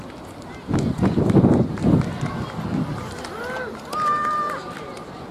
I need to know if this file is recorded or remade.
recorded